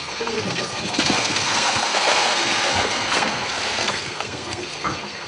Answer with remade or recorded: remade